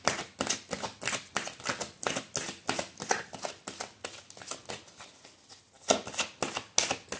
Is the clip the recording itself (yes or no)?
yes